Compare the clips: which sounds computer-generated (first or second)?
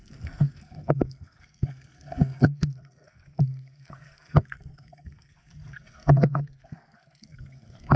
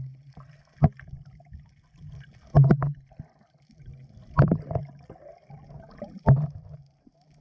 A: first